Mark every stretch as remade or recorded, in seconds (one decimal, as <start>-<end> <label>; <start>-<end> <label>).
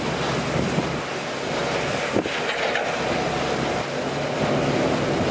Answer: 0.0-5.3 recorded